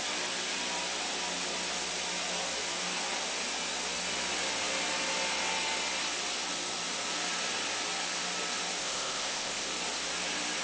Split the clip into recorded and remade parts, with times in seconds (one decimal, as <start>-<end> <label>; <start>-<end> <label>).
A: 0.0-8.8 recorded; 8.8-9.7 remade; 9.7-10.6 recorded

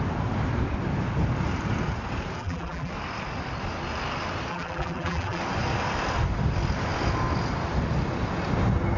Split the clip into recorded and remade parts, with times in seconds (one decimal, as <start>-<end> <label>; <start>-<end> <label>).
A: 0.0-2.4 recorded; 2.4-2.9 remade; 2.9-4.5 recorded; 4.5-5.4 remade; 5.4-9.0 recorded

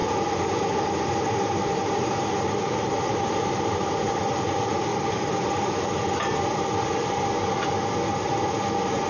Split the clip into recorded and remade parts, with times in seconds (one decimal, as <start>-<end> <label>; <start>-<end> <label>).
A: 0.0-4.1 remade; 4.1-4.9 recorded; 4.9-6.4 remade; 6.4-9.1 recorded

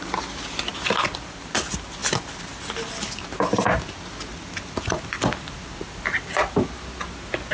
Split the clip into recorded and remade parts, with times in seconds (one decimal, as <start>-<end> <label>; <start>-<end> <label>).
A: 0.0-7.5 recorded

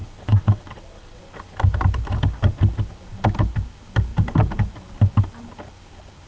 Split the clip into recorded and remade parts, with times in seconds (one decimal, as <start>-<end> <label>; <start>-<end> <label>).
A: 0.0-1.2 remade; 1.2-6.3 recorded